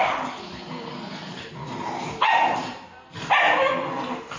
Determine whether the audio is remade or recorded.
recorded